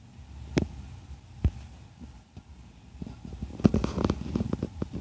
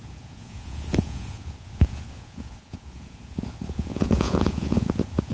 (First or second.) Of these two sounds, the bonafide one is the first